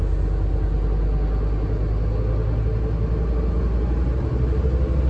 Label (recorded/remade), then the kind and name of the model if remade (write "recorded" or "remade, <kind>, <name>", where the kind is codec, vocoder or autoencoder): recorded